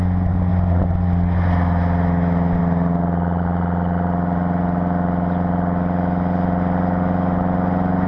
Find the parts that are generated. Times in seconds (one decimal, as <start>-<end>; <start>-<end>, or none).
none